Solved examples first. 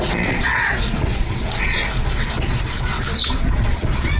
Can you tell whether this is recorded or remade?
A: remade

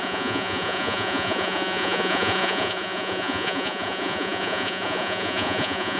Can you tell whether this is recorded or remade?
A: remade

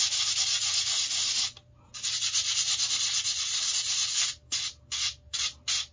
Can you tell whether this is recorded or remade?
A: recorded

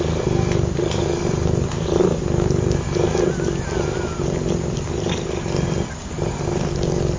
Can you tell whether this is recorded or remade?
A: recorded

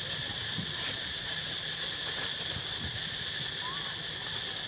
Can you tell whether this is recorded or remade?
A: recorded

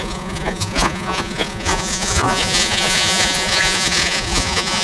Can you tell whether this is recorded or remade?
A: remade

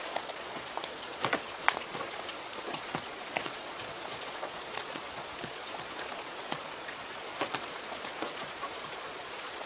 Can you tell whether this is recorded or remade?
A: remade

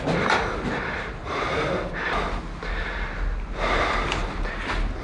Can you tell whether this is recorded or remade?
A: recorded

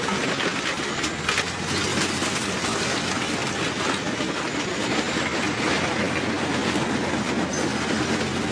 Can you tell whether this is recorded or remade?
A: recorded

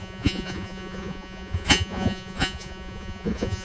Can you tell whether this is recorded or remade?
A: remade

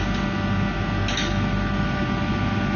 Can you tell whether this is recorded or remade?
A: recorded